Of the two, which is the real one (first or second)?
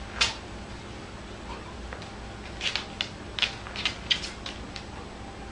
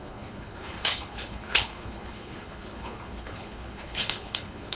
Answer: first